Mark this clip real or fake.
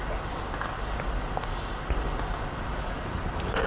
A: real